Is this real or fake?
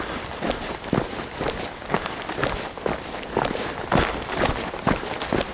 real